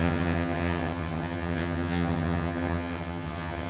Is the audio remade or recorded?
remade